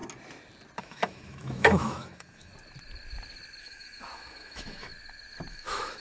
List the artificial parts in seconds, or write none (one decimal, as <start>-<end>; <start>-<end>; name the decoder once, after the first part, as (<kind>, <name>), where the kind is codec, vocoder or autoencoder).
0.8-2.5 (autoencoder, DAC-VAE); 3.6-4.9; 5.5-6.0